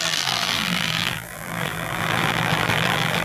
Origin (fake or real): fake